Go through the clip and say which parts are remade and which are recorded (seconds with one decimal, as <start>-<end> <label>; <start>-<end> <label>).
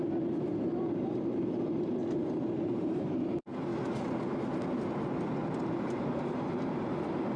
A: 0.0-0.8 recorded; 0.8-2.0 remade; 2.0-2.6 recorded; 2.6-3.7 remade; 3.7-5.7 recorded; 5.7-7.4 remade